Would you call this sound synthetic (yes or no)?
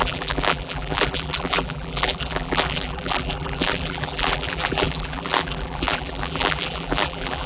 yes